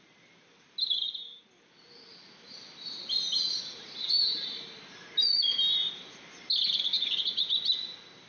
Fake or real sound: real